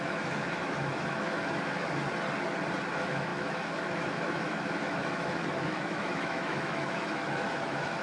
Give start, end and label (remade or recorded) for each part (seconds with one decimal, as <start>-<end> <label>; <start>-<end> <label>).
0.0-2.0 remade; 2.0-2.9 recorded; 2.9-8.0 remade